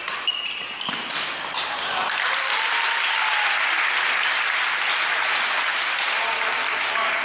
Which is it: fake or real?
real